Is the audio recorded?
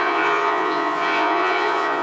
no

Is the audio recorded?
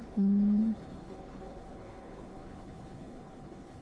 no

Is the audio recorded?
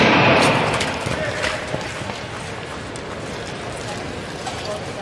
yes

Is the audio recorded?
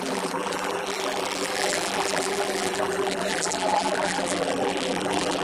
no